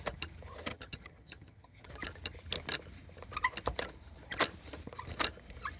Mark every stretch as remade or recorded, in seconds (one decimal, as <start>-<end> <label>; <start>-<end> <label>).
0.0-0.7 recorded; 0.7-1.9 remade; 1.9-5.8 recorded